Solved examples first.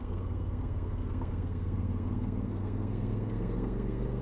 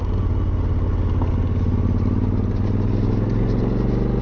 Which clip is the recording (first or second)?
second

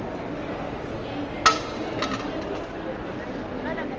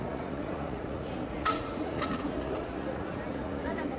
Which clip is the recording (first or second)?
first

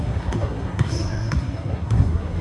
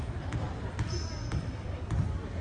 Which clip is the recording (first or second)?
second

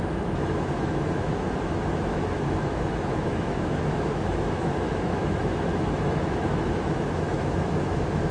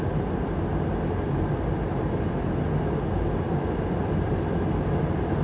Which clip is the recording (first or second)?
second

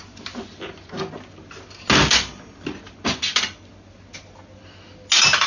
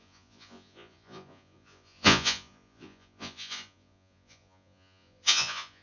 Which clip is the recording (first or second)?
first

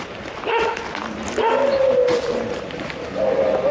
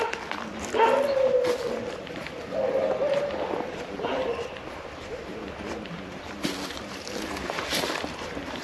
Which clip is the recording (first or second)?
first